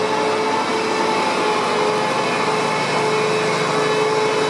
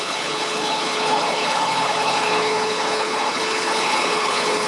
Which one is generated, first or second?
second